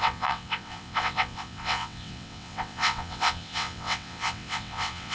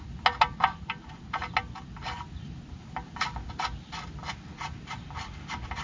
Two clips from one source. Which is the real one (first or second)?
second